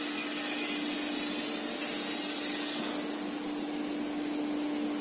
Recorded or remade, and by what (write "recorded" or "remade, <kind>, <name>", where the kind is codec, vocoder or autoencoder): recorded